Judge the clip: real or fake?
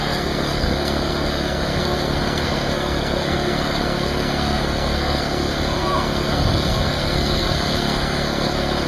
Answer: fake